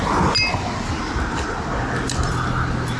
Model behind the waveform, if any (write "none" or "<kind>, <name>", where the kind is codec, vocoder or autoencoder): none